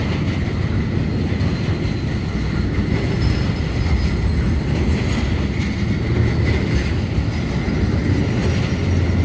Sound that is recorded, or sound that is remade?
recorded